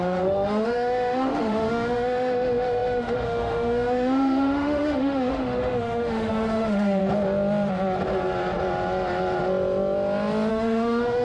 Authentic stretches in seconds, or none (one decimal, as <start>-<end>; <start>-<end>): 7.0-10.5